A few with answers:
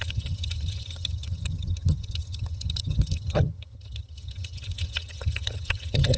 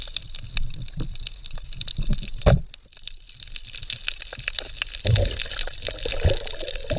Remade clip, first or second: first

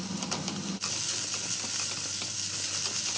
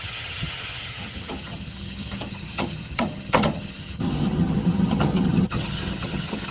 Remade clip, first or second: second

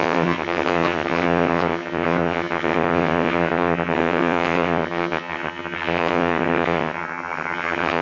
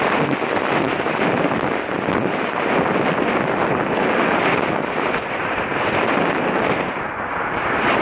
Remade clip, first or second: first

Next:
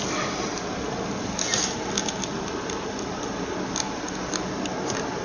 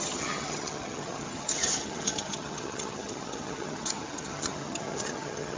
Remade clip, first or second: second